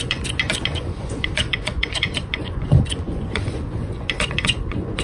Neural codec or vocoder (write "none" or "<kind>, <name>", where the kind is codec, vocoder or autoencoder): vocoder, Vocos